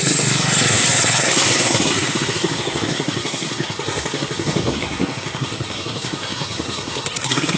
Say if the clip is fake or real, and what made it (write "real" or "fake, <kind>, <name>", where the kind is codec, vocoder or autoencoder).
fake, codec, SNAC